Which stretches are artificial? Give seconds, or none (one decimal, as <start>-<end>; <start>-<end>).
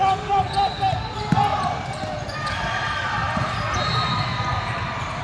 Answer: none